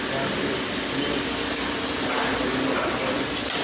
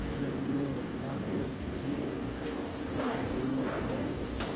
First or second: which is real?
first